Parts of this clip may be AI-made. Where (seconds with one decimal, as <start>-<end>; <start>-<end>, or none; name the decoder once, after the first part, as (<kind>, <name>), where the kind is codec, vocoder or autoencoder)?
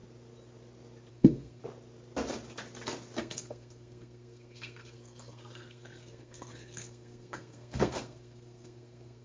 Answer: 1.1-1.6 (codec, SNAC); 3.2-9.2